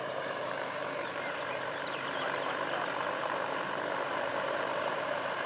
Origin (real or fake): fake